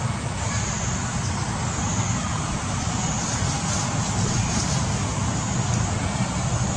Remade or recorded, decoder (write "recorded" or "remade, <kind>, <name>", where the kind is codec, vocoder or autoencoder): recorded